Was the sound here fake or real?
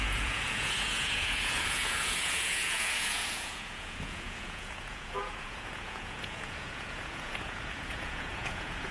fake